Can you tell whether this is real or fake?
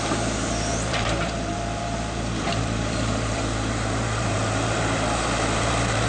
fake